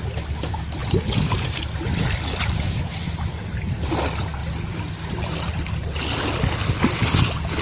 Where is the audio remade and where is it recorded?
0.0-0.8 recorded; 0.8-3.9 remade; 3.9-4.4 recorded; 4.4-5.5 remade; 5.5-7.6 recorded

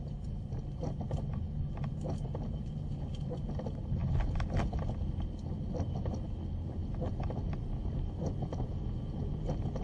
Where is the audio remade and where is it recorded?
0.0-9.8 recorded